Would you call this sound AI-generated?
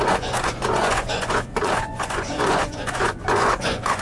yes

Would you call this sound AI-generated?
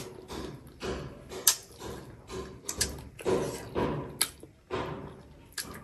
no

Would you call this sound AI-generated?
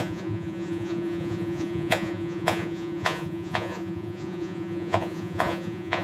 yes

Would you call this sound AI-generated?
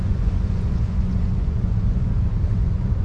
yes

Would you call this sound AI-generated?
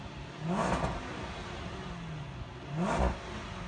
no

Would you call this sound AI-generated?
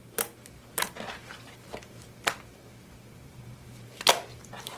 no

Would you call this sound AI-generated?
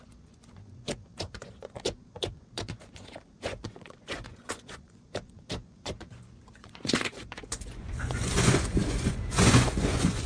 yes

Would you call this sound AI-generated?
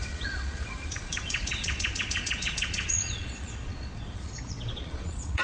yes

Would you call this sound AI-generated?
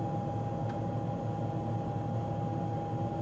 no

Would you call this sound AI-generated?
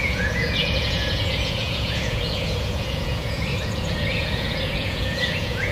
yes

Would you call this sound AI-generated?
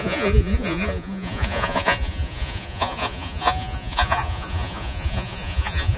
yes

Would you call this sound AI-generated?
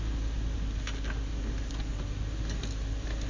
no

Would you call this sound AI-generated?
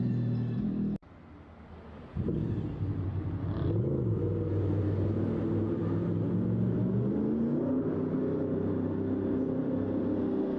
no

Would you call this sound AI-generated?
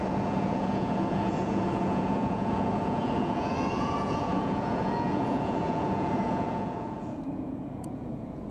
yes